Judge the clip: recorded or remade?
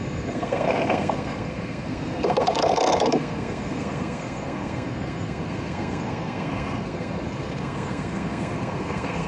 remade